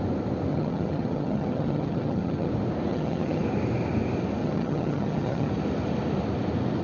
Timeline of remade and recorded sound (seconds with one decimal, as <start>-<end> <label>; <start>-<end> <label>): 0.0-0.5 recorded; 0.5-2.5 remade; 2.5-2.9 recorded; 2.9-3.4 remade; 3.4-4.4 recorded; 4.4-5.5 remade; 5.5-6.8 recorded